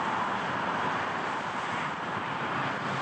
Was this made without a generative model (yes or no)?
yes